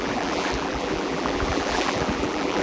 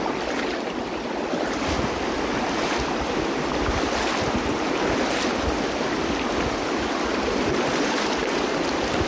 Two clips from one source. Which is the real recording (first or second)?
second